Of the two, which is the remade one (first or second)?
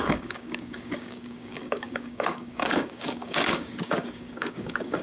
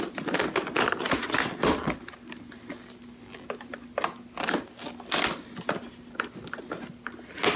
first